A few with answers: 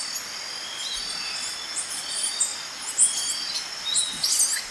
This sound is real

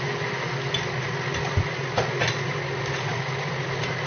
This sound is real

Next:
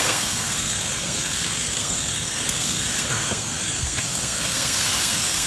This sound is fake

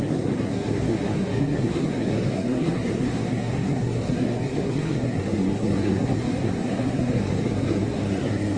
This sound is fake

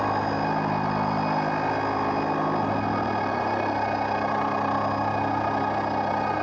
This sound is real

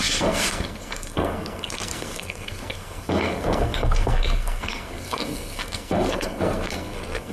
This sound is fake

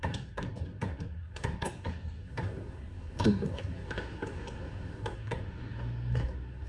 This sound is fake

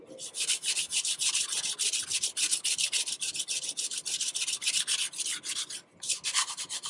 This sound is real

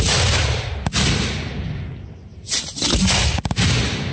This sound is real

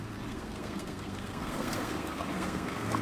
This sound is fake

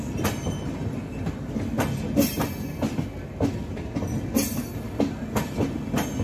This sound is real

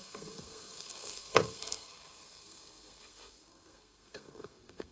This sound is fake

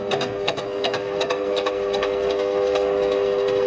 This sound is fake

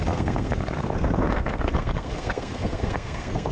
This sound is fake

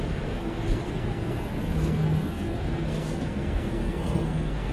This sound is fake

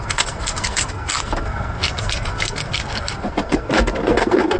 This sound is fake